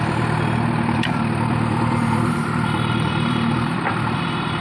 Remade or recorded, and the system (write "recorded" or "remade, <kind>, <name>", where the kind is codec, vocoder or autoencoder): remade, vocoder, BigVGAN v2